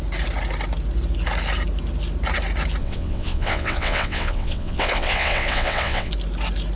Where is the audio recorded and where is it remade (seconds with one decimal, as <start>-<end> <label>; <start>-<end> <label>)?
0.0-2.8 recorded; 2.8-6.1 remade; 6.1-6.8 recorded